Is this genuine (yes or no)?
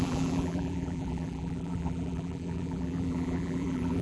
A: no